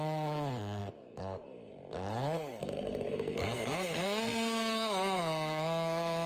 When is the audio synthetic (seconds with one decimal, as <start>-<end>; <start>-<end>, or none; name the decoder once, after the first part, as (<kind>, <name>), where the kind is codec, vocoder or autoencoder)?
0.0-6.3 (codec, SNAC)